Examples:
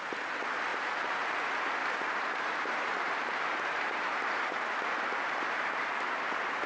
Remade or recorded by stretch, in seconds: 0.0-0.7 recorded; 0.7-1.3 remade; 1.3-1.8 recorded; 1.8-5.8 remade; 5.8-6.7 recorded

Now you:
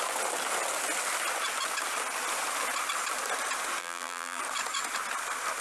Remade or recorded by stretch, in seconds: 0.0-3.8 recorded; 3.8-4.4 remade; 4.4-5.6 recorded

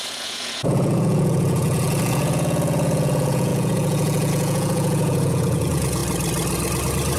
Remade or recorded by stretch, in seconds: 0.0-6.0 remade; 6.0-7.2 recorded

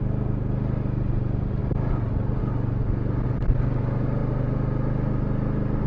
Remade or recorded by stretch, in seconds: 0.0-5.9 recorded

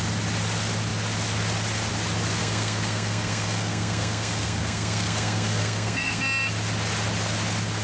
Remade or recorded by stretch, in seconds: 0.0-2.4 recorded; 2.4-6.2 remade; 6.2-7.8 recorded

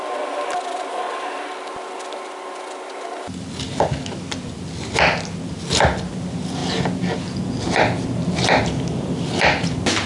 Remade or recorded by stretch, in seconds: 0.0-10.1 recorded

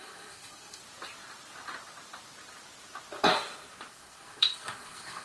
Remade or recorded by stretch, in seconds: 0.0-0.8 remade; 0.8-3.9 recorded; 3.9-5.2 remade